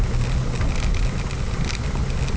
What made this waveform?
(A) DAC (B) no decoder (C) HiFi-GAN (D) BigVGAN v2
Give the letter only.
B